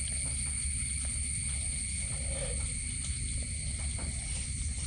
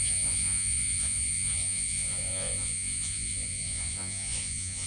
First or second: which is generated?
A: second